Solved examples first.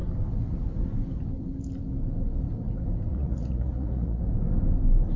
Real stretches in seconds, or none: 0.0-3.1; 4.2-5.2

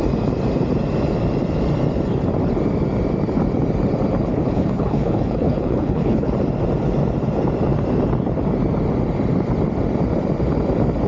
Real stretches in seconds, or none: 0.0-4.3; 6.3-11.1

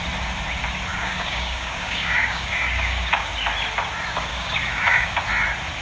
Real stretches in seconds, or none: 0.0-0.9; 3.3-4.3; 5.2-5.8

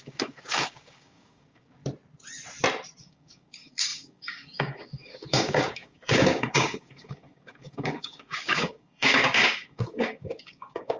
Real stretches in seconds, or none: 1.8-3.0

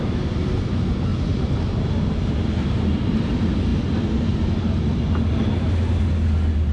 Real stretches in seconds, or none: 0.0-1.1; 3.0-6.7